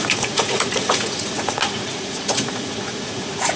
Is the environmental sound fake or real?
fake